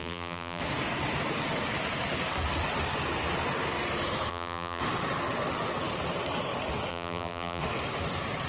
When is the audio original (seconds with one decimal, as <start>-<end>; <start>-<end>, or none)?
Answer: 0.6-4.3; 4.8-6.9; 7.6-8.5